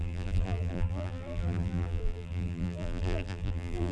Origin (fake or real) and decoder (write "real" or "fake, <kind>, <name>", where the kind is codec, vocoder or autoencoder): fake, vocoder, BigVGAN v2